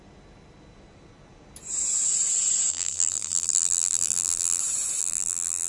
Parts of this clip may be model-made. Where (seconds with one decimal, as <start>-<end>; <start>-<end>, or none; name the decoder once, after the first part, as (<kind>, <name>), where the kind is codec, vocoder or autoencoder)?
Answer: 2.7-4.6 (vocoder, BigVGAN v2); 5.0-5.7